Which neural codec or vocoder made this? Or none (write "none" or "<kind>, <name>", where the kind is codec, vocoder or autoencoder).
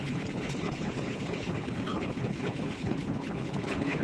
codec, HILCodec